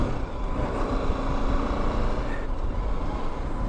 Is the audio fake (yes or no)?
no